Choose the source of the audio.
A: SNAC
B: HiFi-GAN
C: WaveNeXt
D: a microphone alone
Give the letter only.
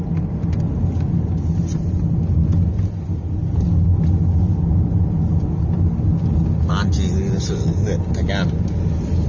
D